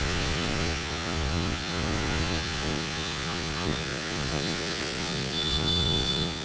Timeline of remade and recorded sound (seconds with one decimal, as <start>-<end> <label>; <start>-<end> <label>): 0.0-6.4 remade